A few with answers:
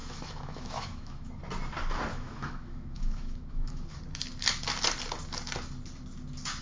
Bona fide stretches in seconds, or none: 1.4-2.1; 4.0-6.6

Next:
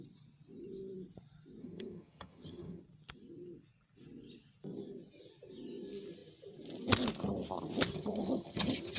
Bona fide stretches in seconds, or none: 0.0-1.6; 2.8-7.9

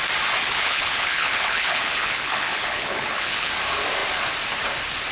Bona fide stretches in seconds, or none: 0.0-0.4; 3.5-5.1